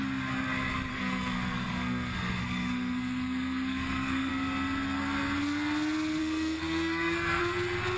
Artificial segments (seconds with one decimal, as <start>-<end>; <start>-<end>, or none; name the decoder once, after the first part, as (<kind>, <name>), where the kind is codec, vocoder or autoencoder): 0.9-4.3 (codec, SNAC); 6.2-7.4